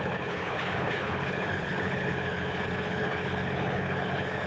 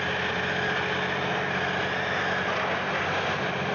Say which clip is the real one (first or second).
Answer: second